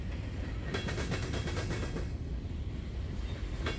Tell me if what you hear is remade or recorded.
recorded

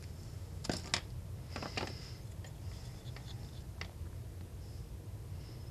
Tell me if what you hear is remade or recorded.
recorded